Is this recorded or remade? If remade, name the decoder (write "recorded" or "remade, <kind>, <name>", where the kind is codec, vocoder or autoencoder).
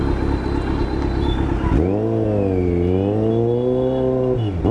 recorded